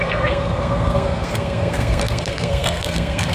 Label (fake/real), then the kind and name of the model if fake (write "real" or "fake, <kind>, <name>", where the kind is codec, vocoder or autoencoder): fake, codec, SNAC